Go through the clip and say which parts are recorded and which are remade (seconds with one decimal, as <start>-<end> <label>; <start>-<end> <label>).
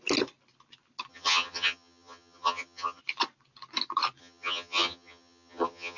0.0-1.1 recorded; 1.1-3.0 remade; 3.0-4.2 recorded; 4.2-6.0 remade